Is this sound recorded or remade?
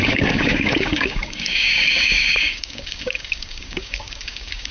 remade